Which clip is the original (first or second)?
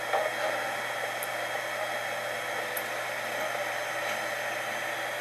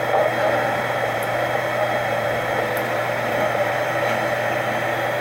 first